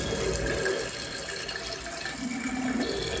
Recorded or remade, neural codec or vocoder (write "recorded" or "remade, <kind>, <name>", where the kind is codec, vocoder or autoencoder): recorded